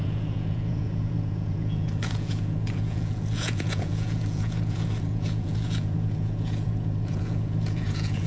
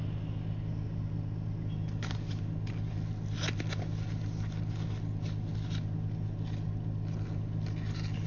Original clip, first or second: second